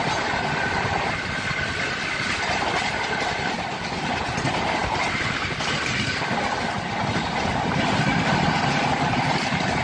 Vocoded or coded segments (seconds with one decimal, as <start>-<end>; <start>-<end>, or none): 0.0-9.8

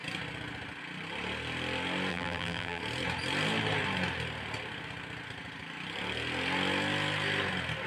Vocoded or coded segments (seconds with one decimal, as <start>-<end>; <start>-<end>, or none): 2.1-2.8

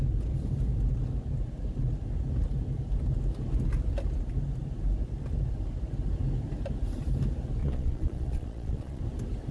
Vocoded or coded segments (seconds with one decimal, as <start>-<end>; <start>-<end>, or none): 7.6-9.0

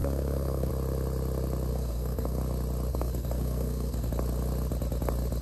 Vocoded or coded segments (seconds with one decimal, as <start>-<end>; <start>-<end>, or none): 0.0-0.7; 1.7-2.4; 2.9-4.1

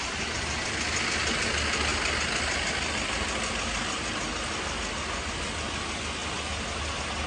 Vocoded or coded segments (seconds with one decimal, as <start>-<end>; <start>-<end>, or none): none

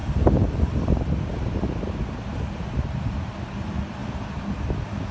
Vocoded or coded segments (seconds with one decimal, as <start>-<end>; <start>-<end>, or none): none